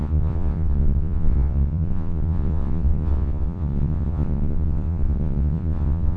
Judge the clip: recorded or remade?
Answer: remade